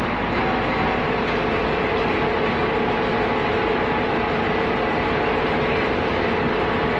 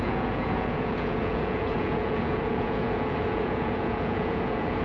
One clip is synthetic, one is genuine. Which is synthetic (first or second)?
second